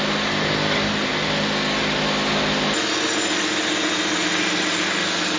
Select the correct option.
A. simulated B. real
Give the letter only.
B